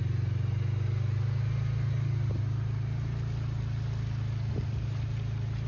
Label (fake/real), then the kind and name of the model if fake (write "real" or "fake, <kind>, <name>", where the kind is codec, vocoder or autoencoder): real